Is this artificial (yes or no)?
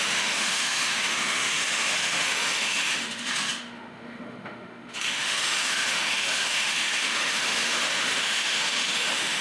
yes